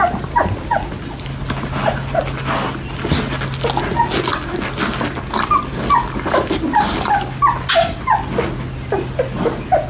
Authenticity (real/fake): real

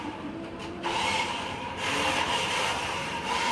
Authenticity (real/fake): fake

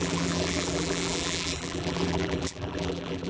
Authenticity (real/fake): fake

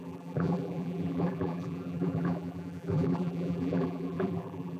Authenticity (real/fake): fake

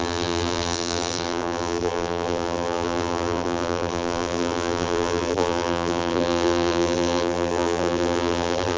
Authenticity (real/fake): fake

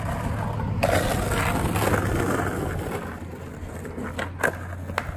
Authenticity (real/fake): real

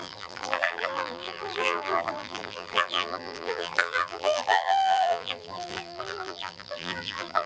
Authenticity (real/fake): fake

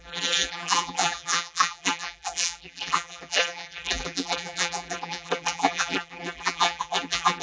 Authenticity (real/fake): fake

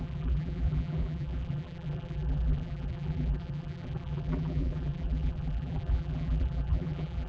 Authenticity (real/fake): fake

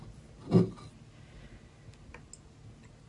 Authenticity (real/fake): real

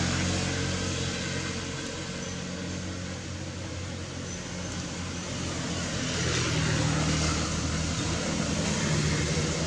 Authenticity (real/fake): real